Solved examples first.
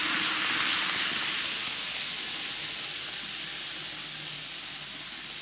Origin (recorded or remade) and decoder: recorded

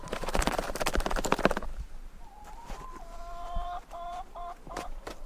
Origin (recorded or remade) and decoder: remade, vocoder, BigVGAN v2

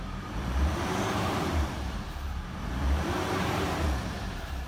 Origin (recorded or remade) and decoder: remade, vocoder, BigVGAN v2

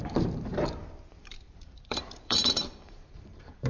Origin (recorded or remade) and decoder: remade, vocoder, BigVGAN v2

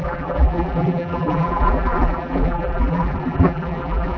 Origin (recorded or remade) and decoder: remade, vocoder, BigVGAN v2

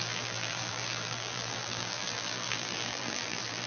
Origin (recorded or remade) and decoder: remade, vocoder, BigVGAN v2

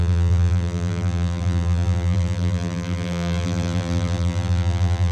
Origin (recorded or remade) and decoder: remade, vocoder, BigVGAN v2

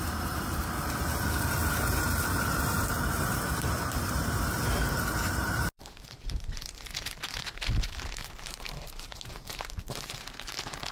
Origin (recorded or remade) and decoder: remade, vocoder, BigVGAN v2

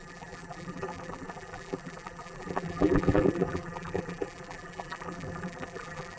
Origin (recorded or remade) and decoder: remade, vocoder, BigVGAN v2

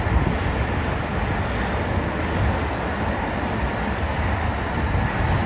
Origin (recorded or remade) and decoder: recorded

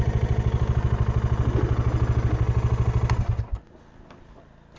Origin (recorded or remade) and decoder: recorded